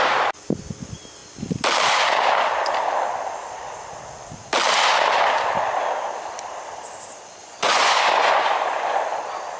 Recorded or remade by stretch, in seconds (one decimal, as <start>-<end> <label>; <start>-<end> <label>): 0.0-7.4 recorded; 7.4-9.0 remade; 9.0-9.6 recorded

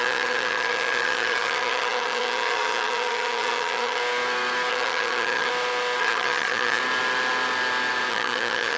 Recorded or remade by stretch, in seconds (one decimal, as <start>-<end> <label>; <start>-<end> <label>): 0.0-4.0 remade; 4.0-4.7 recorded; 4.7-5.5 remade; 5.5-6.0 recorded; 6.0-6.8 remade; 6.8-8.1 recorded; 8.1-8.8 remade

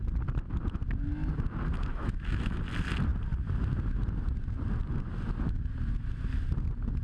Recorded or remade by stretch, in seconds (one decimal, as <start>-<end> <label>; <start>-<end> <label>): 0.0-1.9 recorded; 1.9-2.6 remade; 2.6-7.0 recorded

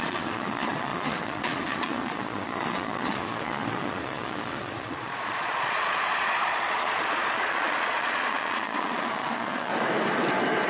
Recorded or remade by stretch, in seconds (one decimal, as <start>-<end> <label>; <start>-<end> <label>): 0.0-9.7 remade; 9.7-10.7 recorded